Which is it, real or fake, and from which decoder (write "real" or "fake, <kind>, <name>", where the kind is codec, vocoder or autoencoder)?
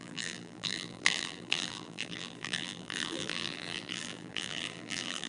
fake, vocoder, BigVGAN v2